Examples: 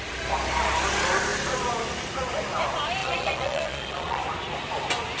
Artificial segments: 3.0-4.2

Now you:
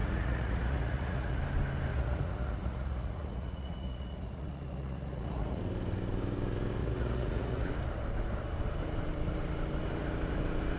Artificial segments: 0.0-1.4; 1.9-5.6; 6.8-7.7

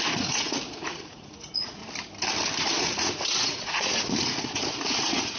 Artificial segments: 0.0-1.8; 2.6-5.4

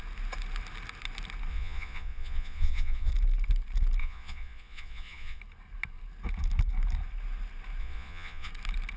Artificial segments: 1.5-3.1; 4.0-5.4; 7.8-8.5

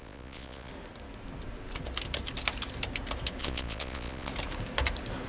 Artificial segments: 0.0-0.7; 3.4-4.3

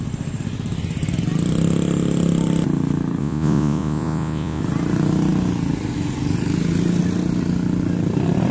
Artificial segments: 3.2-4.6